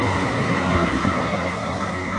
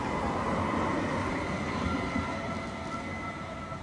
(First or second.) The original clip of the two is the second